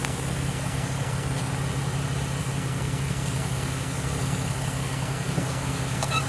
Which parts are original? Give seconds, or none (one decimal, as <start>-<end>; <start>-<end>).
1.5-2.4